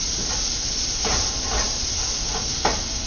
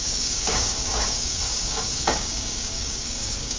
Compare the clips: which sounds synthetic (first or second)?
second